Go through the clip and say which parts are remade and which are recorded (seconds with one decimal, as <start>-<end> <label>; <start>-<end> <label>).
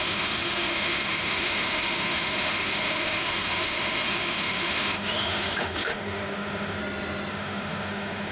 0.0-6.8 remade; 6.8-7.3 recorded; 7.3-8.3 remade